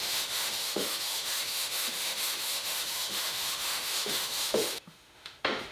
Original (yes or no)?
no